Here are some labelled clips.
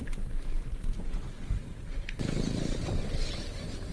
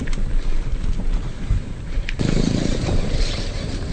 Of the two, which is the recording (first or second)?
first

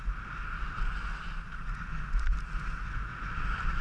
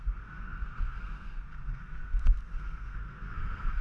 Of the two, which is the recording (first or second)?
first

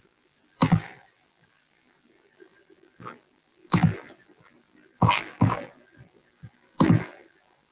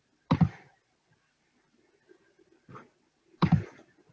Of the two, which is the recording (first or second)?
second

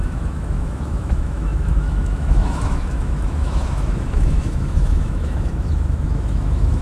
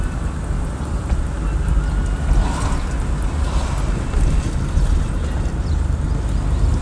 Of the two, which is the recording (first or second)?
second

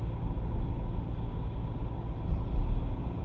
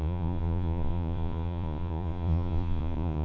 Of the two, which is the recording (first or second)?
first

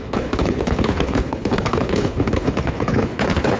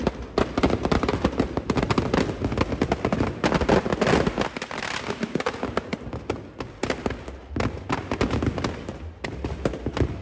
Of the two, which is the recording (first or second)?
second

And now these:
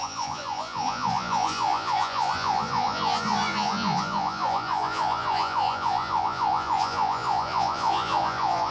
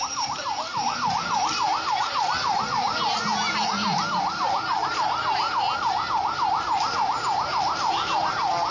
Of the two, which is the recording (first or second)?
second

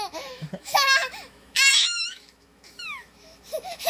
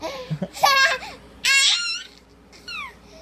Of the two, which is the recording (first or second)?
second